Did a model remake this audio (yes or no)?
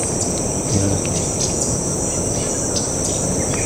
no